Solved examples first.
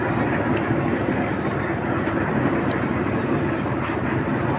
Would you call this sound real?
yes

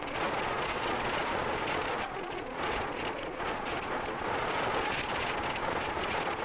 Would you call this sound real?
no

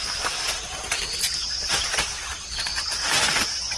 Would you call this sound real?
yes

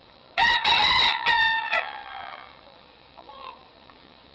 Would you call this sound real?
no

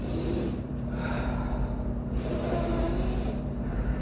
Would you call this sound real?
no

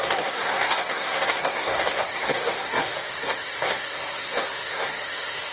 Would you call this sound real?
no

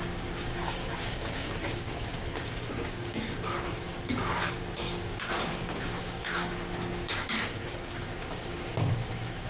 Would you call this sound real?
no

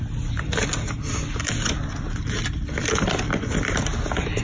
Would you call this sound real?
yes